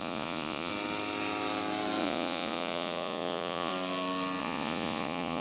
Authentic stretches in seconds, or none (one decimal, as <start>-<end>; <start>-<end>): 0.7-2.0; 3.7-4.4